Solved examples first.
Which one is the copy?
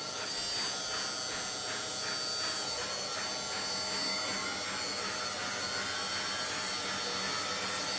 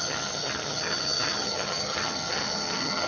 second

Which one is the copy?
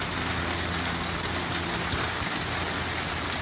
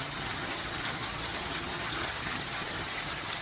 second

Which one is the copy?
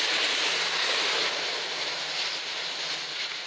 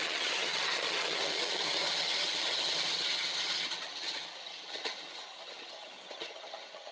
second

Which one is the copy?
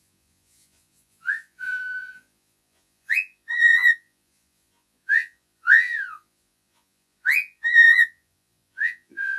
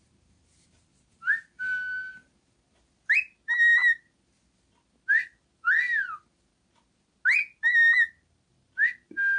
first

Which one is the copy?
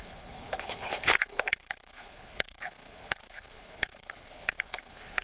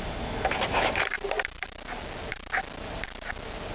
first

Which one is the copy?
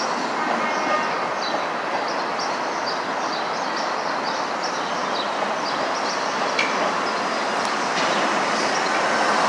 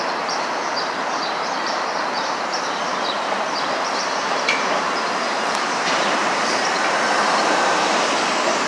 second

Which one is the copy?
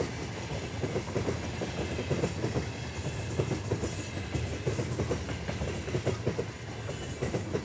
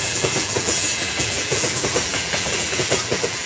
second